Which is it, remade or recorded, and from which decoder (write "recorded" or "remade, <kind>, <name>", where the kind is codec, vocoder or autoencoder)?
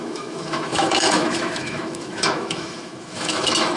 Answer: remade, autoencoder, DAC-VAE